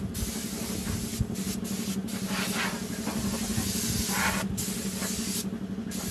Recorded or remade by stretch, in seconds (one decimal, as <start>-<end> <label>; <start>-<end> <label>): 0.0-6.1 recorded